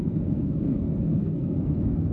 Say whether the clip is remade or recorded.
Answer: remade